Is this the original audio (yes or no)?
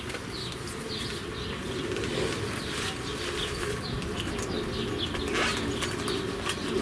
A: yes